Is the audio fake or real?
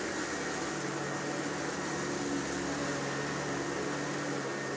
real